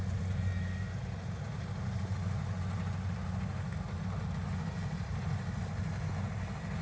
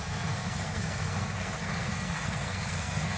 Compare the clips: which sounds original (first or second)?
first